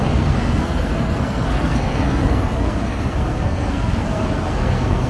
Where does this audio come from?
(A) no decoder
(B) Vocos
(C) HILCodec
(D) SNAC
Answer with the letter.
D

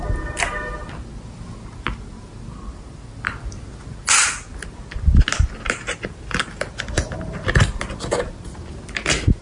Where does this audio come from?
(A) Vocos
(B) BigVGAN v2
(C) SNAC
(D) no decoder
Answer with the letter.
D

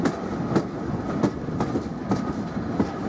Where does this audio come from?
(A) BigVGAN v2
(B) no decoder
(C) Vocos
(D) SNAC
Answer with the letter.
B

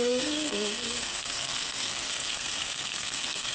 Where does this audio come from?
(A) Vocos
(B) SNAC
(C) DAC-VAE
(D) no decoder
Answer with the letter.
B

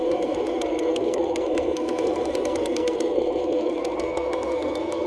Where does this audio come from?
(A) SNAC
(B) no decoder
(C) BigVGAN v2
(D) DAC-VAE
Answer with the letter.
A